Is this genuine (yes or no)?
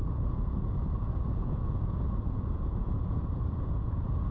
no